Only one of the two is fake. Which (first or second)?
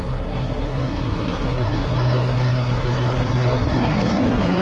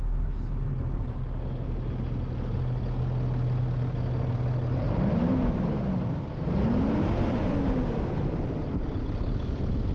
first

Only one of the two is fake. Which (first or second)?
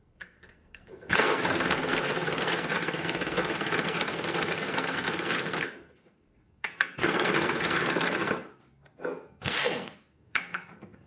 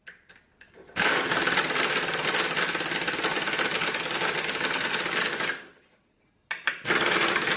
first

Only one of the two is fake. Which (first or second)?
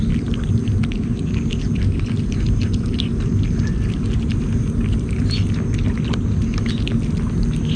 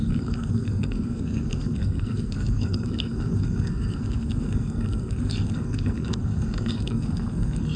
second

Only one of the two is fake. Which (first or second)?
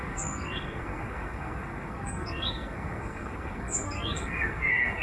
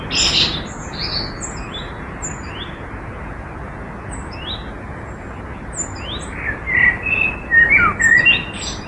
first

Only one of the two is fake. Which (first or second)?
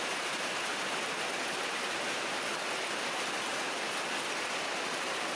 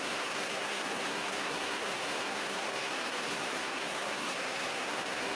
second